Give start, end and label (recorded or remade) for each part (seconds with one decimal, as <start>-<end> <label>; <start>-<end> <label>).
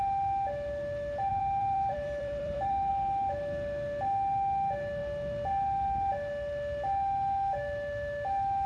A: 0.0-1.3 recorded; 1.3-2.9 remade; 2.9-8.7 recorded